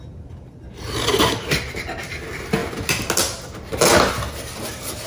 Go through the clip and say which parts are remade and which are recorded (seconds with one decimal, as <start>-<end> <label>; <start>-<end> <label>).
0.0-5.1 recorded